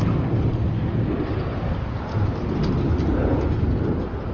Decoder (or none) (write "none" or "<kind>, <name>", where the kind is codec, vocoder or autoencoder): none